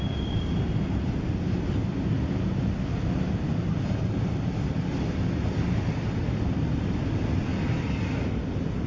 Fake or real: real